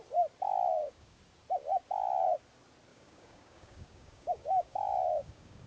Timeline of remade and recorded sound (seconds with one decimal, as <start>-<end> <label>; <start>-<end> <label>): 0.0-0.7 recorded; 0.7-1.2 remade; 1.2-2.9 recorded; 2.9-5.7 remade